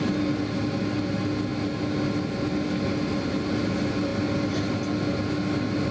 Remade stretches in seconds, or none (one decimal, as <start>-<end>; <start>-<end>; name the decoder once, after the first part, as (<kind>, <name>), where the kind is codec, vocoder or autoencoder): none